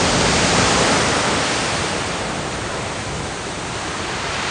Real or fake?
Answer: real